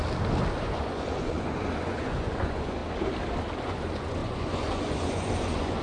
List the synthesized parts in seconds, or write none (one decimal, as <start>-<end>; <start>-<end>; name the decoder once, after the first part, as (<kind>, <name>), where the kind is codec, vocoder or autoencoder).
0.6-2.8 (vocoder, Vocos); 3.6-5.8